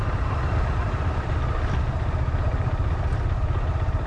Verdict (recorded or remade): remade